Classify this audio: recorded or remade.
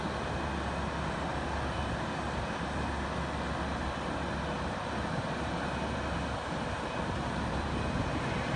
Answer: recorded